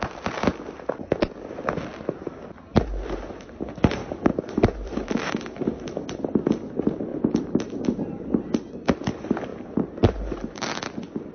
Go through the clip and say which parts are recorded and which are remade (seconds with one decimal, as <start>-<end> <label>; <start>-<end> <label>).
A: 0.0-4.0 recorded; 4.0-6.2 remade; 6.2-9.5 recorded; 9.5-10.8 remade; 10.8-11.3 recorded